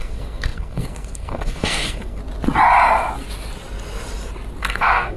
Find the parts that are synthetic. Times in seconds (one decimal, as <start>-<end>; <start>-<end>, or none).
0.0-2.2; 4.6-5.2